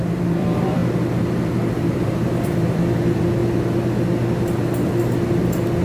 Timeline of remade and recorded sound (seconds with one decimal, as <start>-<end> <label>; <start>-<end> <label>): 0.0-0.8 remade; 0.8-1.7 recorded; 1.7-3.4 remade; 3.4-5.3 recorded; 5.3-5.8 remade